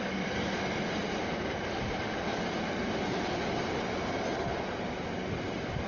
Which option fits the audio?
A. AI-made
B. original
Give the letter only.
B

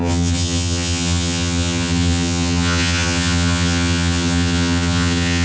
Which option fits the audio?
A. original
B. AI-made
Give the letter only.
B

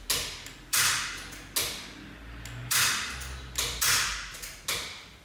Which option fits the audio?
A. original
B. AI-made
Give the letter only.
A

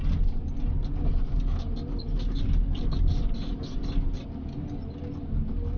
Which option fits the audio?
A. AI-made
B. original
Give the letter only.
B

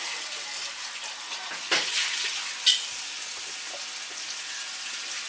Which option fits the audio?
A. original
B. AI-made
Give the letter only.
A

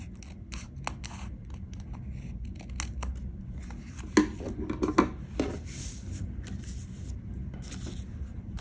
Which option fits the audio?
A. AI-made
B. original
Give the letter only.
B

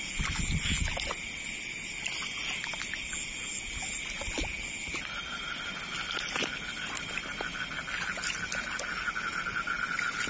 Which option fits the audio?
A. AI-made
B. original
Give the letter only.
B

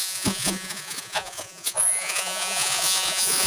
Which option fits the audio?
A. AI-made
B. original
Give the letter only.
A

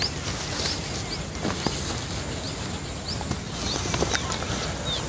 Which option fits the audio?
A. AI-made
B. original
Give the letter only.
B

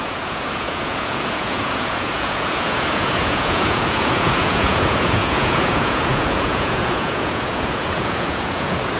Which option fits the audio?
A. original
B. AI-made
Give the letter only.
B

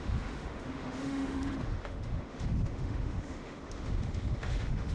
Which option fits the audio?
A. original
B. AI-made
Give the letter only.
B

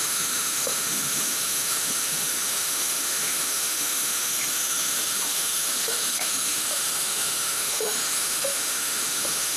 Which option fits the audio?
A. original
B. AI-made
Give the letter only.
B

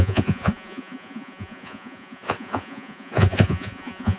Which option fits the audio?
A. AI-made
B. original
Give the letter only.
A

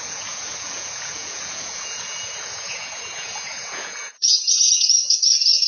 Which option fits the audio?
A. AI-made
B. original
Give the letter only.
A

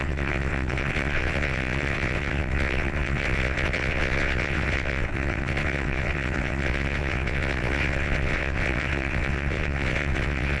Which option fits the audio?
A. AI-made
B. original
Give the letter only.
A